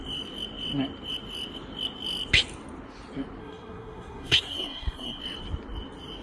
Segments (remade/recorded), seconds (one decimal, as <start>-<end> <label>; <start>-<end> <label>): 0.0-3.4 recorded; 3.4-5.2 remade; 5.2-6.2 recorded